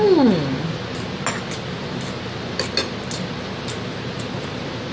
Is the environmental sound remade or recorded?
recorded